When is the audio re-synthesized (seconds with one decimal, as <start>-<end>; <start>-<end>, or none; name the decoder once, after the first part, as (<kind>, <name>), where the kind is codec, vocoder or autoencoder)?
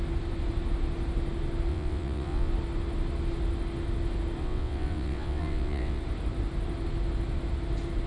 1.7-2.5 (vocoder, WaveNeXt); 4.4-6.0